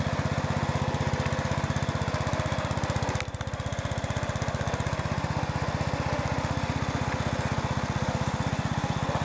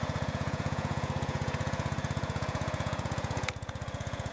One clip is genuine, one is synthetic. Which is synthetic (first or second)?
second